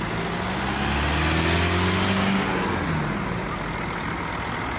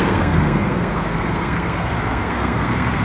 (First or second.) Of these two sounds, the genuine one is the first